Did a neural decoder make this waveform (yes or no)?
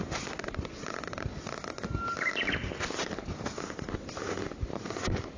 no